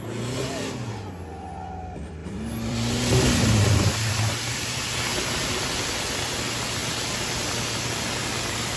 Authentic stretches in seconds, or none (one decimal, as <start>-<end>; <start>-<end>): 0.0-2.2; 4.1-8.8